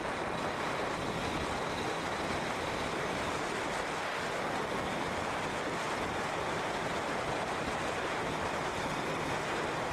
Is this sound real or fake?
real